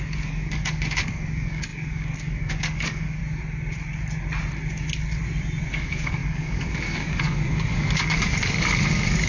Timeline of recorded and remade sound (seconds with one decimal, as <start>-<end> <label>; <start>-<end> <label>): 0.0-3.2 remade; 3.2-5.7 recorded; 5.7-9.3 remade